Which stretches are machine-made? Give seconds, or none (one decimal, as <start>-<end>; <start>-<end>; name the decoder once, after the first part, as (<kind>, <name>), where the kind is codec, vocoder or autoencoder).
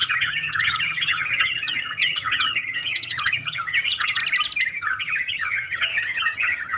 0.0-4.2 (vocoder, HiFi-GAN); 4.7-6.8